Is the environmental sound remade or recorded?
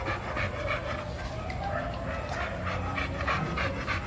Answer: recorded